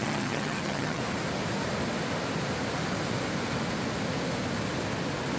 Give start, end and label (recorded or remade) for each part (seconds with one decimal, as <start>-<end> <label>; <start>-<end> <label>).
0.0-1.0 remade; 1.0-5.4 recorded